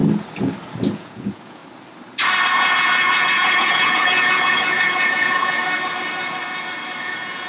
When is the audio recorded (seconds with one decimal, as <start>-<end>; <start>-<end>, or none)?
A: 0.0-0.9; 1.6-2.5; 5.6-7.0